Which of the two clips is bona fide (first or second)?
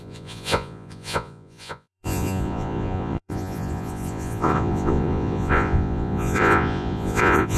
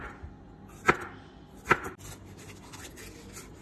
second